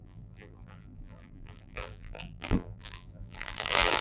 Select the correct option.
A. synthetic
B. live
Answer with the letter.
A